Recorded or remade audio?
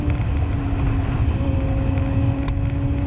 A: recorded